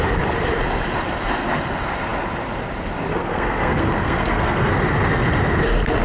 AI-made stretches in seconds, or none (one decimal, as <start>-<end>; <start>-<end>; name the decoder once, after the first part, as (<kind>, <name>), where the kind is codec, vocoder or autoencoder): 3.1-4.7 (codec, SNAC)